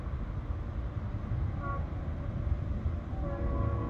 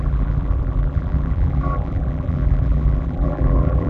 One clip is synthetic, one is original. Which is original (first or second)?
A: first